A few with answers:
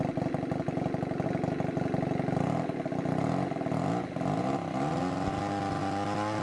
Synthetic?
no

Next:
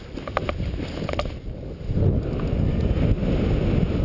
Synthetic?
no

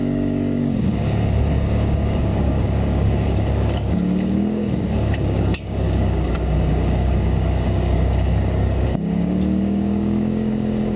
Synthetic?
yes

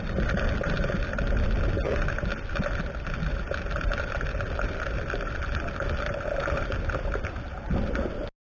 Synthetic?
no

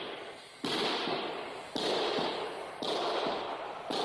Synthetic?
no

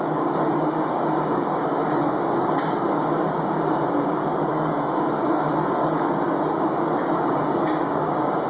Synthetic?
yes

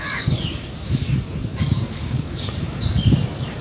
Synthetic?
yes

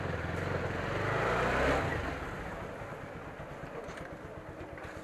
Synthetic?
no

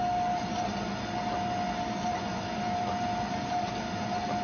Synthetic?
no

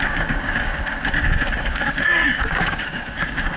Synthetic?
yes